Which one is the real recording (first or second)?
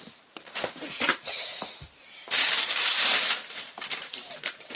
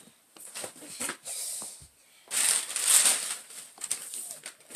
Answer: second